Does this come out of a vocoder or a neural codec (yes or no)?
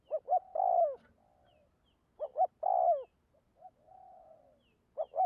no